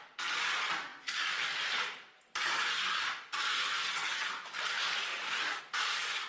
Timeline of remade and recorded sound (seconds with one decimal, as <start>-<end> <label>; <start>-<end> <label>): 0.0-3.8 recorded; 3.8-4.3 remade; 4.3-6.3 recorded